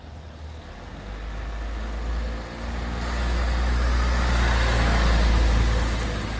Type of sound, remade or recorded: recorded